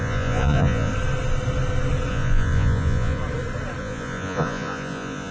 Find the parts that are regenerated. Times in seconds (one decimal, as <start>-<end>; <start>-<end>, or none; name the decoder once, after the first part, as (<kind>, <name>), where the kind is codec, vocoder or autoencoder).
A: 0.0-0.9 (vocoder, Vocos); 2.1-3.2; 3.8-5.3